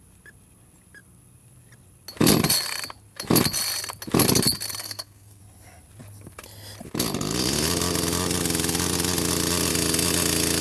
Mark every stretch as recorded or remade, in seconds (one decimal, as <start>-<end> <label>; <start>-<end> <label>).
0.0-4.8 recorded; 4.8-5.4 remade; 5.4-10.6 recorded